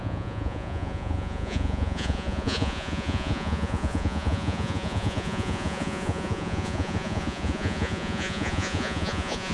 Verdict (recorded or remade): remade